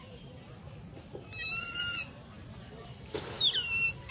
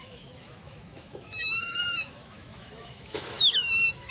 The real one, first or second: first